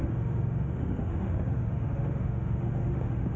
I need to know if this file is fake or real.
fake